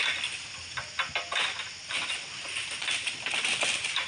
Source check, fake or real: real